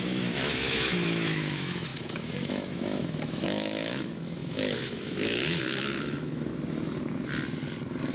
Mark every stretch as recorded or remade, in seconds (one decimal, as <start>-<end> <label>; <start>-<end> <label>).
0.0-6.5 remade; 6.5-8.1 recorded